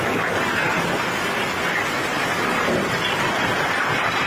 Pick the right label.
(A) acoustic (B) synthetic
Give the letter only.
A